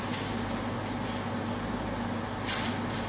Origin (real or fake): real